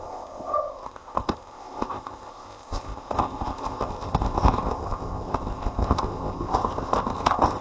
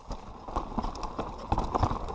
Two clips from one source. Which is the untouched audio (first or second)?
second